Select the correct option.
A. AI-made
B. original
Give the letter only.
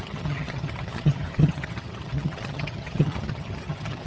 A